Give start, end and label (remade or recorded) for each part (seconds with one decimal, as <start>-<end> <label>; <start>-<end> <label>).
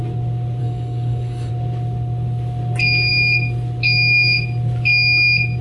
0.0-0.6 recorded; 0.6-1.5 remade; 1.5-5.6 recorded